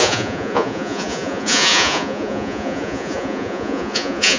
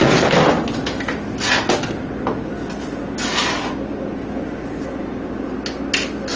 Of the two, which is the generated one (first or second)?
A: first